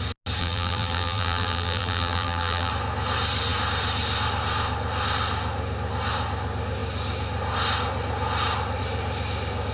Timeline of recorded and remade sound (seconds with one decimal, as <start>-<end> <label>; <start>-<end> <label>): 0.0-0.4 recorded; 0.4-2.7 remade; 2.7-9.7 recorded